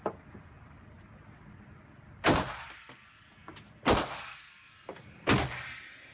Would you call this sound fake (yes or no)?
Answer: no